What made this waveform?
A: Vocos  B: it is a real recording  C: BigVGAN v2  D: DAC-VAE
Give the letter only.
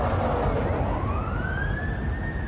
B